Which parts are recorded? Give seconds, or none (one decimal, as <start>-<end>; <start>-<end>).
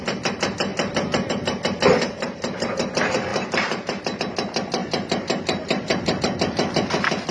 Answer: 0.0-3.3; 4.2-4.8; 6.2-7.3